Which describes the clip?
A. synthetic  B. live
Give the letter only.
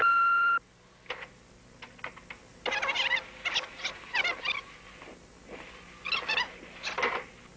B